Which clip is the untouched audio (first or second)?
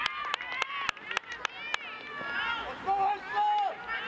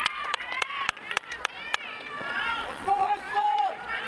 first